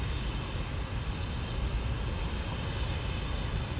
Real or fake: real